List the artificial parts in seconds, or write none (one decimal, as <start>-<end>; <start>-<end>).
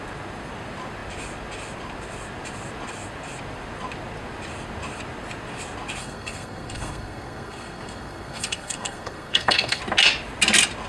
6.0-9.8